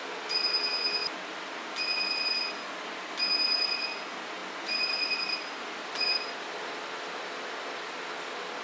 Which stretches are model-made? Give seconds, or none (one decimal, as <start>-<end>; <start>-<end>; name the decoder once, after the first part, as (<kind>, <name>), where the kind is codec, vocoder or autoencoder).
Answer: 4.4-8.6 (vocoder, BigVGAN v2)